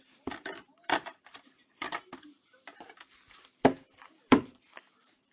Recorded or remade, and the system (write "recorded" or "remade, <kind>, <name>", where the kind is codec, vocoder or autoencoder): remade, vocoder, BigVGAN v2